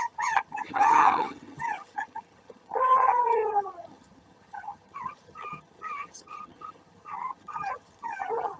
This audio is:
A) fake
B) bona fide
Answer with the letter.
A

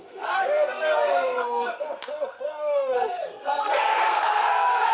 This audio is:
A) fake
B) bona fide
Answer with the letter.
A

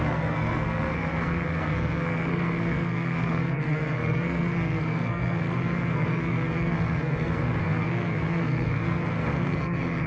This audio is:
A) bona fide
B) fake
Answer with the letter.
B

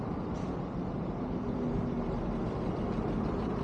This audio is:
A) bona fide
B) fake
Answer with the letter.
A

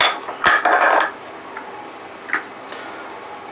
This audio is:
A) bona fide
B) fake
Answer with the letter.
A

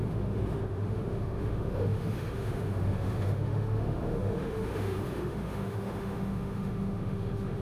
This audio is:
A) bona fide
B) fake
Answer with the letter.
B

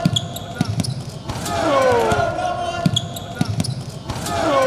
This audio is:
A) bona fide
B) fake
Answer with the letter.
A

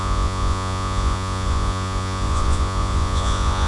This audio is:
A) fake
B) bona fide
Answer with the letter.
A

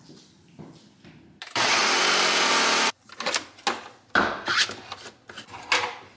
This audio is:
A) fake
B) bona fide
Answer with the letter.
B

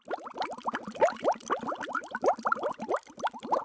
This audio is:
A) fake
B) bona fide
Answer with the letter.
B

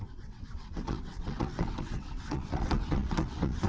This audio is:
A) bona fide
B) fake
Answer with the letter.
B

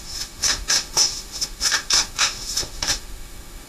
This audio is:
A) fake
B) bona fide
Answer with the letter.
A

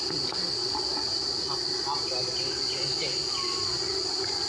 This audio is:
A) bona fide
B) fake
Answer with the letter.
A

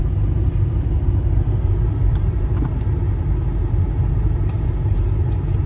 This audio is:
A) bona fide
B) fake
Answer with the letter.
B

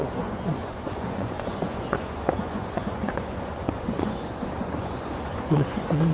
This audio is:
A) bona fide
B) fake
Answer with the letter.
B